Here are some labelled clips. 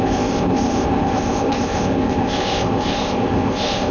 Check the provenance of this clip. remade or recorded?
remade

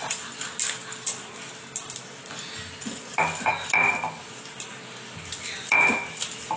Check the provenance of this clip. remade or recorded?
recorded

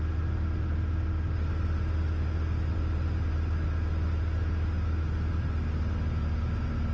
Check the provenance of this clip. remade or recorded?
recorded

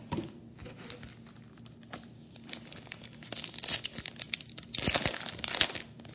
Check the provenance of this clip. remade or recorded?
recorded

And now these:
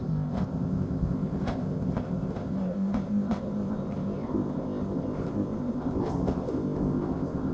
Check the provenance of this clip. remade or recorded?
remade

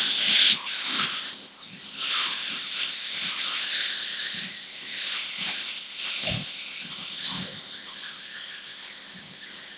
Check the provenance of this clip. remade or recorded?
remade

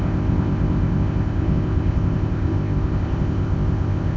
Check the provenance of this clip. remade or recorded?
remade